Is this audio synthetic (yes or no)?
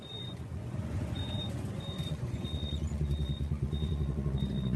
yes